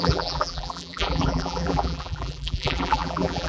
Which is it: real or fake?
fake